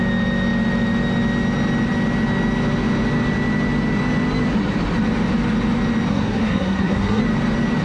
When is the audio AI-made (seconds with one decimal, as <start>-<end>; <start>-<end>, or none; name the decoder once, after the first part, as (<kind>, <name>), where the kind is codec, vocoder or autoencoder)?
6.1-7.2 (codec, SNAC)